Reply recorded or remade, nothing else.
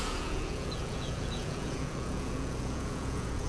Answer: remade